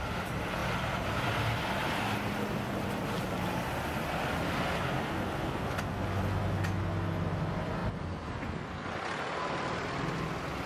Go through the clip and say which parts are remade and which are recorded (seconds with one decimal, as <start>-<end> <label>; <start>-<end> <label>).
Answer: 0.0-10.7 recorded